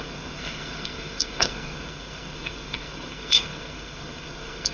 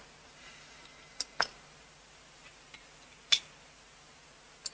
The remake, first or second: first